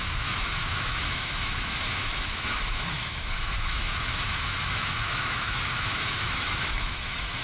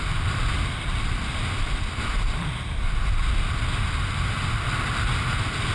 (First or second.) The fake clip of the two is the first